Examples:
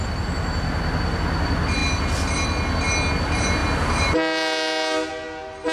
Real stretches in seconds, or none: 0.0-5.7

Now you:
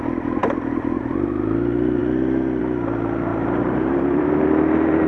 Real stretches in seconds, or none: 0.0-3.3; 4.3-5.1

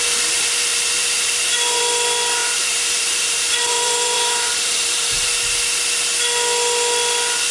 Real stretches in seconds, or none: 0.0-0.7; 1.8-2.4; 5.3-7.5

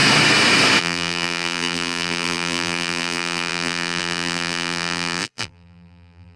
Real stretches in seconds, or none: 0.0-0.8

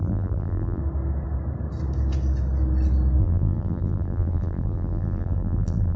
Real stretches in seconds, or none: 0.8-3.2

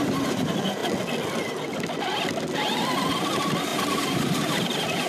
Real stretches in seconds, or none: 0.8-3.1

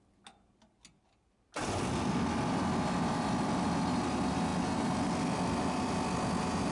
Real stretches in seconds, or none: 0.0-6.7